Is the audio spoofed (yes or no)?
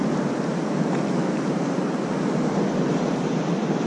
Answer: no